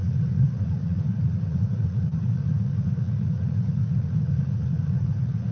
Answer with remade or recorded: remade